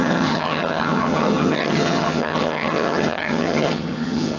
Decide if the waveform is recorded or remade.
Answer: remade